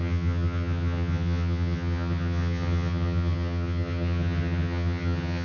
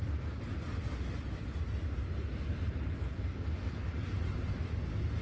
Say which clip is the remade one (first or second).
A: first